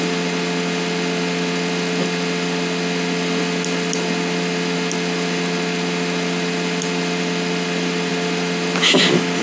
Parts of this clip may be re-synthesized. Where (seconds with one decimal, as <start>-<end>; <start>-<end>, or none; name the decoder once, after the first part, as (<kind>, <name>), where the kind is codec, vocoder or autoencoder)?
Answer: none